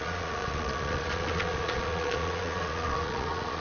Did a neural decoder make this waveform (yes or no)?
yes